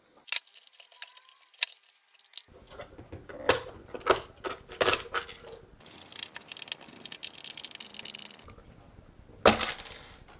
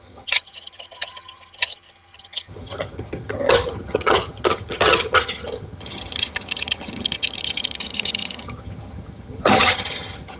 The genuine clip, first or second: first